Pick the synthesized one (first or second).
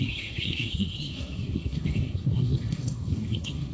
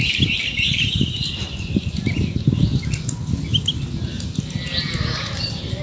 first